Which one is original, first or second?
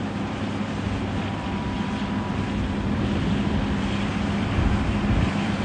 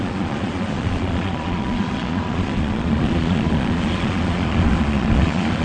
first